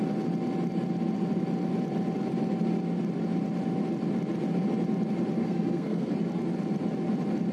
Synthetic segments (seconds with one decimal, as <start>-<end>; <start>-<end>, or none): 5.4-6.1